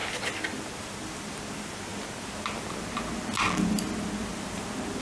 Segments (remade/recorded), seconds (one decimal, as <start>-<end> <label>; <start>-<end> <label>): 0.0-5.0 recorded